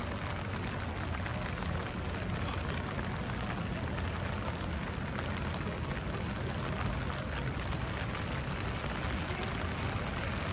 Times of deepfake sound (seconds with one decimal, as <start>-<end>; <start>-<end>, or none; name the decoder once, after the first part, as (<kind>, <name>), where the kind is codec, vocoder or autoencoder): none